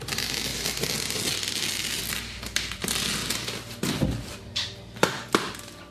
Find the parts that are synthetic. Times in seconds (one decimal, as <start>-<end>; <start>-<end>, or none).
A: 0.0-3.2; 4.3-5.9